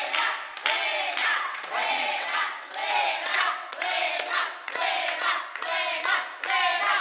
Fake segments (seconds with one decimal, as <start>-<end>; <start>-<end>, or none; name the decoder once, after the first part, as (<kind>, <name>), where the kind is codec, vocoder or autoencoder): 1.2-5.4 (vocoder, WaveNeXt)